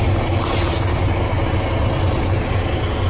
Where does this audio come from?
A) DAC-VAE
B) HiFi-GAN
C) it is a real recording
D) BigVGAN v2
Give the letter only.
C